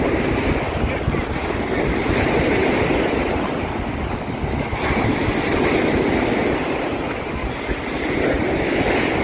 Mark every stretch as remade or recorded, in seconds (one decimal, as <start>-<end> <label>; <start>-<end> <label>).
0.0-9.2 recorded